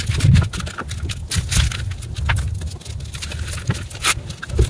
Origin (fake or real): real